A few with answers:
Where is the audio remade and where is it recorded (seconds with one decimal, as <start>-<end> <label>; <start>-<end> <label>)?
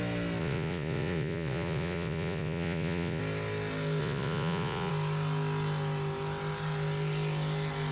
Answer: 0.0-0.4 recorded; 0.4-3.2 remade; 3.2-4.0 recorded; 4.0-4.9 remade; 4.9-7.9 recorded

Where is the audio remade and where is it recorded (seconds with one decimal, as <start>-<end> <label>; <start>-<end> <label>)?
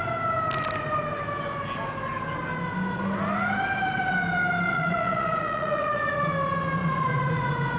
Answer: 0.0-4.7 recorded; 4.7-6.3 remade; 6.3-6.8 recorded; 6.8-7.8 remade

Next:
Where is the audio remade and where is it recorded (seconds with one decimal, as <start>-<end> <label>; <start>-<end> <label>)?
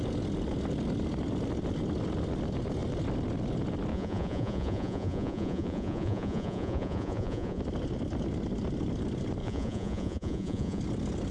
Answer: 0.0-3.9 recorded; 3.9-7.6 remade; 7.6-9.4 recorded; 9.4-10.8 remade; 10.8-11.3 recorded